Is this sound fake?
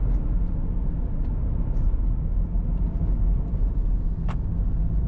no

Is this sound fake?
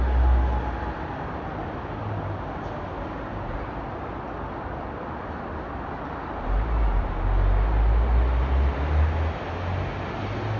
no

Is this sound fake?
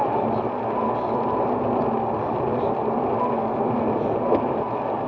no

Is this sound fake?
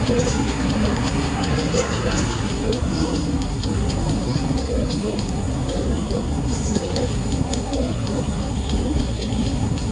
yes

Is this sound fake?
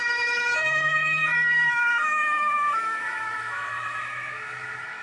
yes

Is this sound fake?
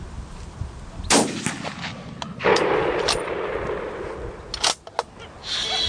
no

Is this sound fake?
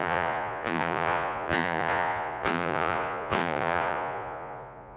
yes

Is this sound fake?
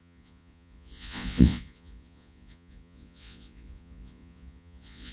yes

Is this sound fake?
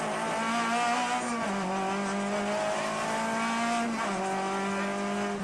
no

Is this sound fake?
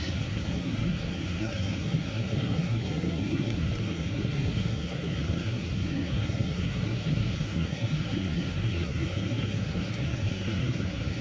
yes